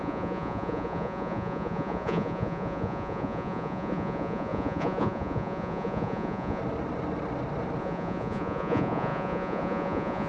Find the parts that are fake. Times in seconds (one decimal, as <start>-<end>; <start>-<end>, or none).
0.0-6.6; 7.8-10.3